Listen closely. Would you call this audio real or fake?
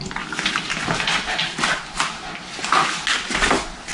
real